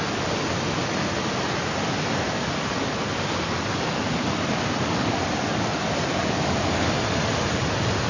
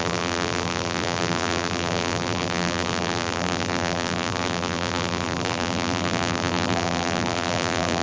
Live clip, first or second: first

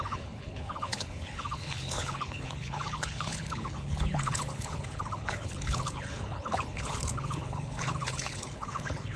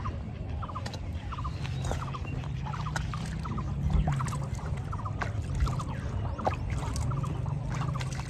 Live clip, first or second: second